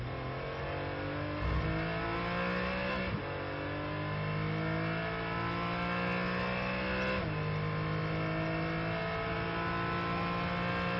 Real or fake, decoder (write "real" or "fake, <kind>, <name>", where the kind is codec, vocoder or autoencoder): real